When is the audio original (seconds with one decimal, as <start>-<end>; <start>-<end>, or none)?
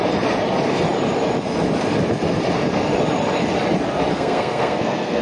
0.0-4.1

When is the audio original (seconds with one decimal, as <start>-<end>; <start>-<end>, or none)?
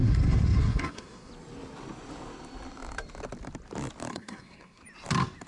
1.3-4.1; 4.8-5.5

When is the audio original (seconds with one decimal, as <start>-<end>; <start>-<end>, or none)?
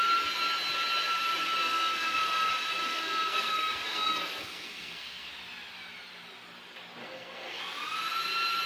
0.0-1.6; 2.5-2.9; 5.3-7.0; 7.6-8.7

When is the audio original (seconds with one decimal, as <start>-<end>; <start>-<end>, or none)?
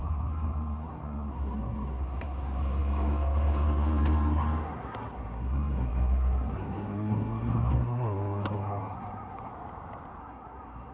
9.5-10.2